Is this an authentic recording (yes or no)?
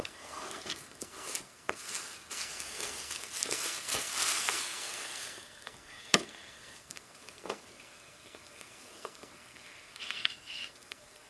no